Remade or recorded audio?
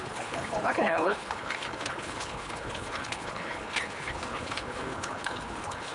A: remade